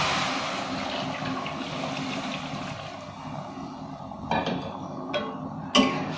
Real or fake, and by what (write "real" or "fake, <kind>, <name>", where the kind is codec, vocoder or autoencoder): real